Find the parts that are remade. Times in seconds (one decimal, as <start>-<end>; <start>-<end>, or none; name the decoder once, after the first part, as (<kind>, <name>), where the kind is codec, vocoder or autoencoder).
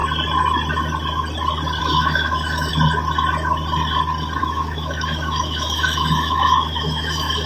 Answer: 1.8-2.7 (autoencoder, DAC-VAE); 4.4-7.5